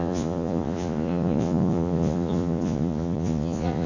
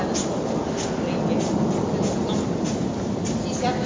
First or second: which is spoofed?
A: first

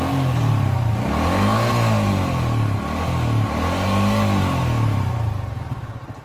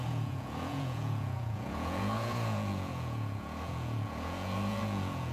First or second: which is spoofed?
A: second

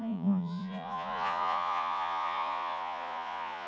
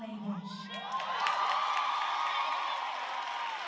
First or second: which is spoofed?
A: first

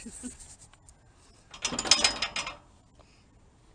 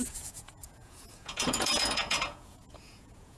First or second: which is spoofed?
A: second